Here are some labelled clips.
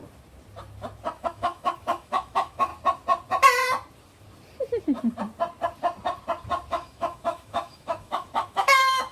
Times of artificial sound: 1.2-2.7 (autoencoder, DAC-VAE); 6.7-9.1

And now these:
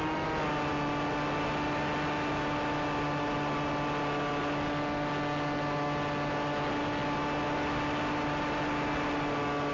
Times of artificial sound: none

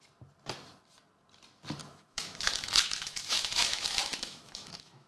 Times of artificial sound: 1.8-5.1 (autoencoder, DAC-VAE)

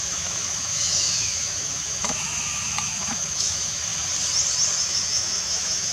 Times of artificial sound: 0.0-3.9 (autoencoder, DAC-VAE); 4.8-5.9

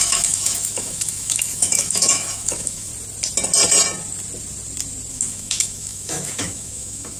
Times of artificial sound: 0.0-2.9 (autoencoder, DAC-VAE); 5.1-7.2